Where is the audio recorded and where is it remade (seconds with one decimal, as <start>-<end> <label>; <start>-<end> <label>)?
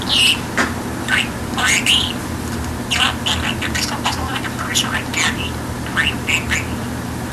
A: 0.0-7.3 recorded